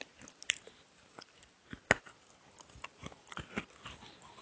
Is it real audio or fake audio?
real